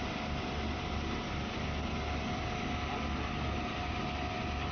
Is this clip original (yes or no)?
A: yes